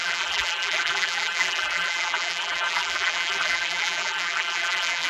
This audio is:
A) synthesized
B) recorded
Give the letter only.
A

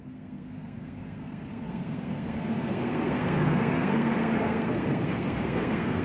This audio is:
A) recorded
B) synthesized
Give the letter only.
B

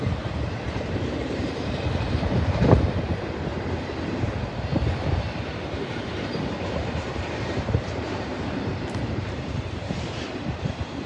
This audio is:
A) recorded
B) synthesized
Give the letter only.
B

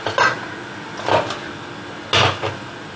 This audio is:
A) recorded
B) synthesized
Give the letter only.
A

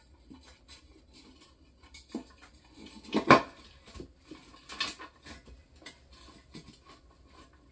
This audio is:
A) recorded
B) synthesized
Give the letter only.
A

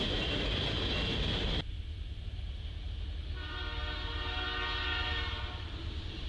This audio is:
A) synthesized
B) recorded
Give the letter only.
B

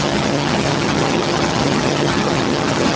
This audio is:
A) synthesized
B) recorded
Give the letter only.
A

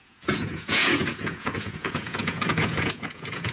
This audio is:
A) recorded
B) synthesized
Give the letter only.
B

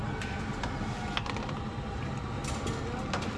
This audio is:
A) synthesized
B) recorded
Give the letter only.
B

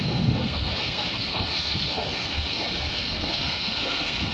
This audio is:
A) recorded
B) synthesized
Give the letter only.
B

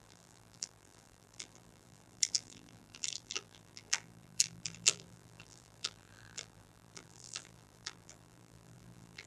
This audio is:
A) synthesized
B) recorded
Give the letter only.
A